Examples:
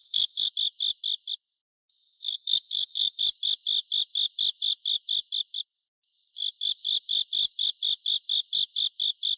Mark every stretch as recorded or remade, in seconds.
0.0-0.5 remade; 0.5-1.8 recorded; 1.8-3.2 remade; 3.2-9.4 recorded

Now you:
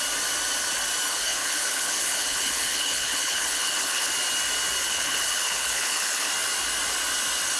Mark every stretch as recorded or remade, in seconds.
0.0-1.1 recorded; 1.1-4.1 remade; 4.1-4.8 recorded; 4.8-6.3 remade; 6.3-7.6 recorded

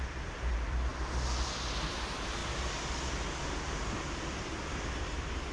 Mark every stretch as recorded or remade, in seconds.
0.0-0.9 remade; 0.9-1.9 recorded; 1.9-2.4 remade; 2.4-4.9 recorded; 4.9-5.5 remade

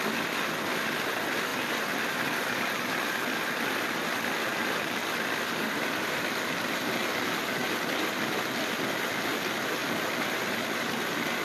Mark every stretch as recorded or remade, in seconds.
0.0-11.4 recorded

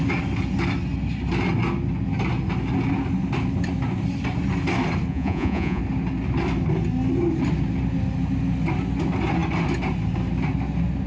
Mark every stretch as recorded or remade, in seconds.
0.0-5.1 recorded; 5.1-5.8 remade; 5.8-11.1 recorded

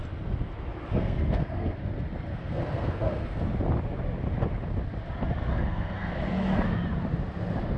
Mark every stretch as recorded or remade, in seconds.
0.0-0.9 recorded; 0.9-1.9 remade; 1.9-2.3 recorded; 2.3-3.4 remade; 3.4-5.5 recorded; 5.5-6.1 remade; 6.1-7.8 recorded

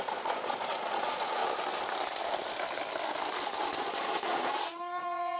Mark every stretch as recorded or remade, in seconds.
0.0-1.4 remade; 1.4-3.8 recorded; 3.8-5.4 remade